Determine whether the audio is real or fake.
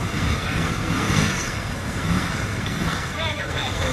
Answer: fake